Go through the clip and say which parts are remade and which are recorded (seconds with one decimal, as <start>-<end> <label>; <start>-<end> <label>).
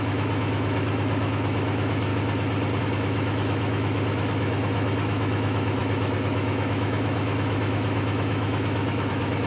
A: 0.0-2.1 remade; 2.1-2.8 recorded; 2.8-9.5 remade